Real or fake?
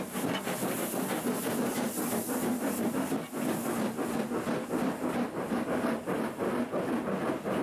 real